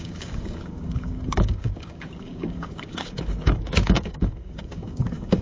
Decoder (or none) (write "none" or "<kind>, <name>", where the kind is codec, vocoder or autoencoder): codec, DAC